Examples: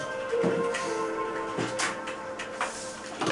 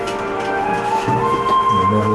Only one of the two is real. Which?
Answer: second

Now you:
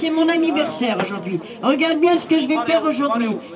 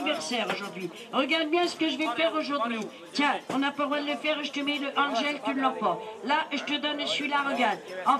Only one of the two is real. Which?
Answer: second